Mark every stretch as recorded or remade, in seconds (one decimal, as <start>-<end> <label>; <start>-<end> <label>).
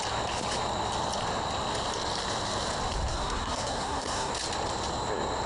0.0-3.1 recorded; 3.1-4.3 remade; 4.3-5.5 recorded